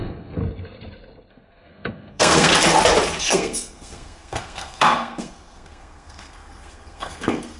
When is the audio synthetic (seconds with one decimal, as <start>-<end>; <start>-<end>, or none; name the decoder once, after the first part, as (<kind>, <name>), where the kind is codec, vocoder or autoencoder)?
0.0-0.4 (codec, SNAC); 1.3-2.5; 3.2-7.6